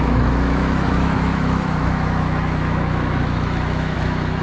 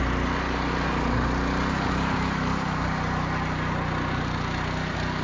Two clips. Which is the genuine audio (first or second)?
second